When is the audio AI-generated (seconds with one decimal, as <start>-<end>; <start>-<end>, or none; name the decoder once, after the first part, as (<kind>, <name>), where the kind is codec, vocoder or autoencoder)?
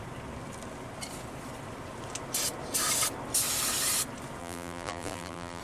4.4-5.6 (vocoder, BigVGAN v2)